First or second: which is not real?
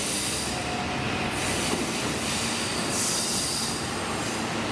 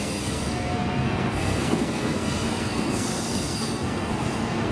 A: second